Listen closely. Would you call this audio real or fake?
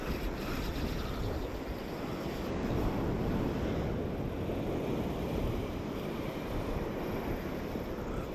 real